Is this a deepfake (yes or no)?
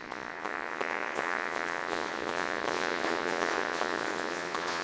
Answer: yes